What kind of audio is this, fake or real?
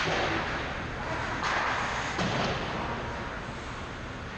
real